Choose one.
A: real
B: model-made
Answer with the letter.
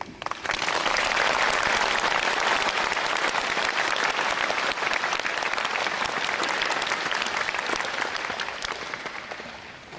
A